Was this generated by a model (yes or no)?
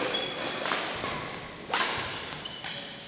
no